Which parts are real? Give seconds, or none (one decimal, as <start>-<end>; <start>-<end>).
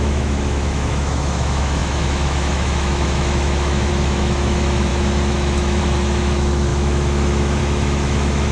none